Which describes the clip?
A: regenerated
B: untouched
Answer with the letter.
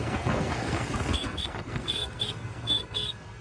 A